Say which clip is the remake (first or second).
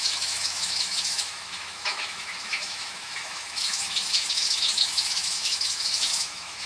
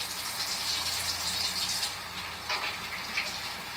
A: first